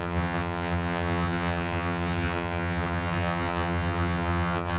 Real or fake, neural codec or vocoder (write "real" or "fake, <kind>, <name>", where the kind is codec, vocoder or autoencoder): fake, vocoder, HiFi-GAN